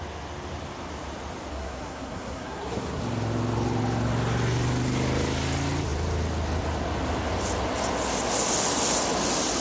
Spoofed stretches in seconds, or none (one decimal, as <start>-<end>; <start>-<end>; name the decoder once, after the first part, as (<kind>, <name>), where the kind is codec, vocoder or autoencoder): 1.5-3.0 (codec, SNAC)

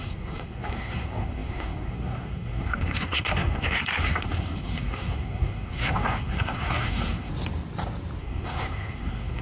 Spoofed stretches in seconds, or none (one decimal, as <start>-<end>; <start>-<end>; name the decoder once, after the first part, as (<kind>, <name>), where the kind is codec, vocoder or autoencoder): 0.0-7.3 (codec, SNAC); 8.2-9.4

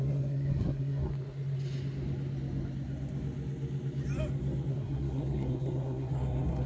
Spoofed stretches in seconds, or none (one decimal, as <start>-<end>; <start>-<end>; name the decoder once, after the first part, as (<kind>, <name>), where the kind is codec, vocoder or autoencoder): 0.0-1.1 (codec, SNAC); 4.7-6.7

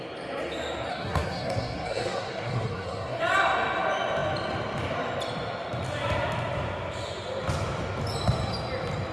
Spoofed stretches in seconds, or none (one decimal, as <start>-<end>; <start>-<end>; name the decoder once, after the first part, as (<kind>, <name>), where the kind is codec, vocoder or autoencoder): 0.9-3.2 (codec, SNAC)

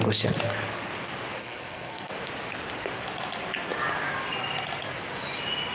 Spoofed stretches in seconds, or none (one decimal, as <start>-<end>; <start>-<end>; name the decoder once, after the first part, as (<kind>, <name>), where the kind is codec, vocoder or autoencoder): 1.4-2.1 (codec, SNAC)

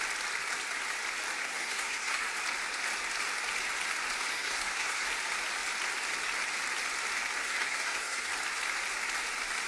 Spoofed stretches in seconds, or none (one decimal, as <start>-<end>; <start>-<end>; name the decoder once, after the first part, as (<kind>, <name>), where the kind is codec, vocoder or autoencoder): 1.4-2.3 (codec, SNAC); 4.3-5.1; 7.4-8.3